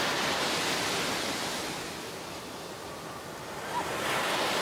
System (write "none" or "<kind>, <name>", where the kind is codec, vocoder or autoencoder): none